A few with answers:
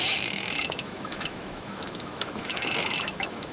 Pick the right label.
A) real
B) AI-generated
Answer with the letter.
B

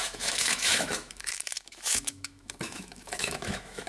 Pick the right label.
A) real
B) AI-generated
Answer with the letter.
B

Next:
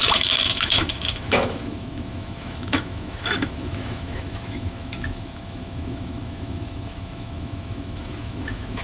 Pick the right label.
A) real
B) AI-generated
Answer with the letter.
B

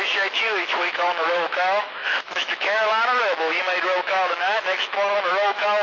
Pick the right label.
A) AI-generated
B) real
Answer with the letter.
A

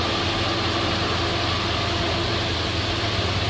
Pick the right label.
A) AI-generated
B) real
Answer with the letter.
B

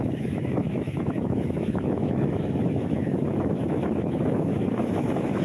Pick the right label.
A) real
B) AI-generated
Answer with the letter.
B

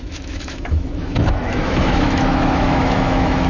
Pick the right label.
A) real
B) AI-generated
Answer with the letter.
B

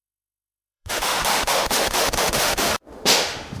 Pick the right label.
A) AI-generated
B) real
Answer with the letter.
A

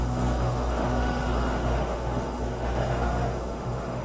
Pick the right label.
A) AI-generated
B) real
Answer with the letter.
A